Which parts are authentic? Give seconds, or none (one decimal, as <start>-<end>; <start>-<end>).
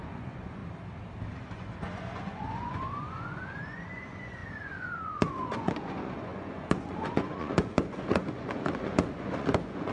0.6-1.4